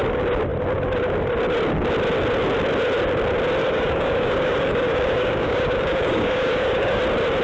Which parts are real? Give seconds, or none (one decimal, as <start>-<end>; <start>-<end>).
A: 0.0-3.6; 7.0-7.4